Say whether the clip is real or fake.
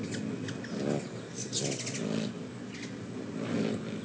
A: real